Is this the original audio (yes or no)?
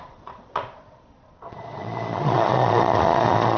no